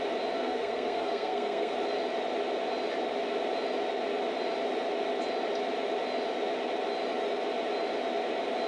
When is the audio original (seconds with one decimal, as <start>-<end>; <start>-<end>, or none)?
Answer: 0.0-0.4; 1.7-8.7